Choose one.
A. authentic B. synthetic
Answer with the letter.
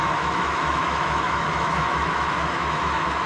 B